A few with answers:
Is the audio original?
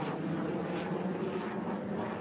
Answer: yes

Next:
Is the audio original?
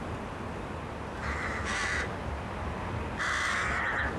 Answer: yes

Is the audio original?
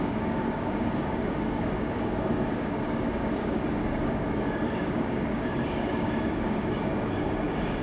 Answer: no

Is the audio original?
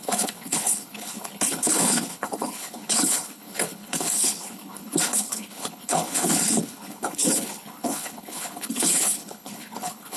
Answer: no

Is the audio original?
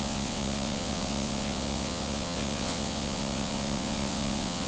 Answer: no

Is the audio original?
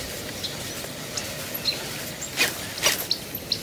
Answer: yes